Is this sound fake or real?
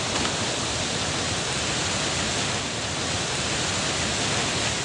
real